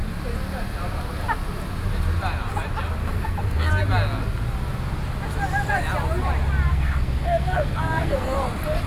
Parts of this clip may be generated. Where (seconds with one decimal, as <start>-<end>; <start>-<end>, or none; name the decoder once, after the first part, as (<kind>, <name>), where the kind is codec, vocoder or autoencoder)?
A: 3.0-3.7 (codec, SNAC); 6.7-8.5